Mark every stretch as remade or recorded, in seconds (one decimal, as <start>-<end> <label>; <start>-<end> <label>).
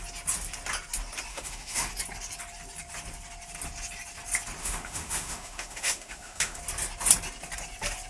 0.0-1.3 recorded; 1.3-1.9 remade; 1.9-4.6 recorded; 4.6-6.6 remade; 6.6-8.1 recorded